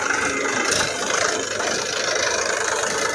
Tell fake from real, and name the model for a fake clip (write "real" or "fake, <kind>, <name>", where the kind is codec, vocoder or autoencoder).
real